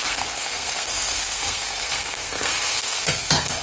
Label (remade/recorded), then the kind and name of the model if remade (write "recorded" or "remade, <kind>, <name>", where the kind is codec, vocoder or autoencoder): remade, codec, SNAC